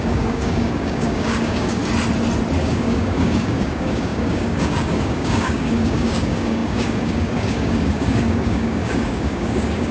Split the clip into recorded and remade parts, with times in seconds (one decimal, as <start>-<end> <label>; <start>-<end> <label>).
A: 0.0-1.8 remade; 1.8-2.6 recorded; 2.6-9.9 remade